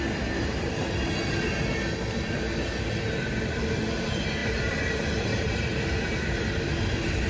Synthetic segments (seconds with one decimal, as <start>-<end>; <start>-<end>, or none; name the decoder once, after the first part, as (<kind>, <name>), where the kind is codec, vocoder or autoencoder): 4.4-5.6 (vocoder, BigVGAN v2)

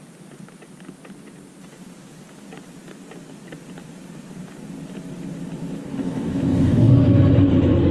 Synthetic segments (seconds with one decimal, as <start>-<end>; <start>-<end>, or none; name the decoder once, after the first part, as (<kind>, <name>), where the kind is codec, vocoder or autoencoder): 5.8-6.9 (codec, DAC)

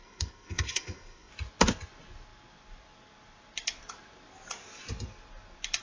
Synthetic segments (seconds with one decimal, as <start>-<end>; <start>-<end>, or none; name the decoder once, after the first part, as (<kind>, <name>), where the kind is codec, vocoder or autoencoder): 0.0-1.3 (codec, SNAC)

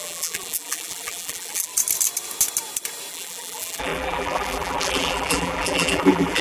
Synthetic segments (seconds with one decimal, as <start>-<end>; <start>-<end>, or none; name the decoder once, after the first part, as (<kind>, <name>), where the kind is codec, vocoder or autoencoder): 0.0-1.7 (vocoder, BigVGAN v2); 3.1-6.4

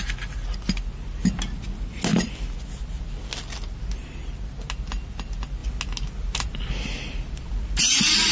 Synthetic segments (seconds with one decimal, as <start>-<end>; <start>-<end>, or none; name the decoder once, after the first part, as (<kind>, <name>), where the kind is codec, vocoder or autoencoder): none

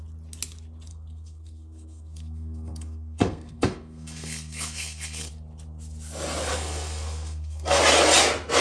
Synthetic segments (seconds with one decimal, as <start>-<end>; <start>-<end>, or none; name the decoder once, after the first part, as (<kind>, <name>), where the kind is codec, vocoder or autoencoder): 0.9-5.3 (codec, SNAC); 6.5-7.8

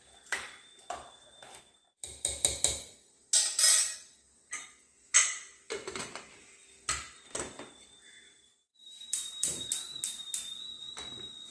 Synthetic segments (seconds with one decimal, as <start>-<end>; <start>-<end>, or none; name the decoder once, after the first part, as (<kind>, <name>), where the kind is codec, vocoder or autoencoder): 8.7-9.7 (vocoder, BigVGAN v2)